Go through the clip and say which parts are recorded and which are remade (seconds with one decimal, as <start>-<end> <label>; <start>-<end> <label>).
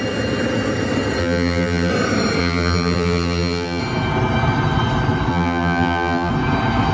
0.0-1.2 recorded; 1.2-1.9 remade; 1.9-2.4 recorded; 2.4-3.8 remade; 3.8-5.3 recorded; 5.3-6.3 remade; 6.3-6.9 recorded